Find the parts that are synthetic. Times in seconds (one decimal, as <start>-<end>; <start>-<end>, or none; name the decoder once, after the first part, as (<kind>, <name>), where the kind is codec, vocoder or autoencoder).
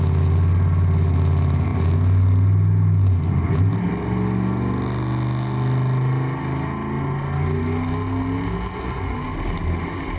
none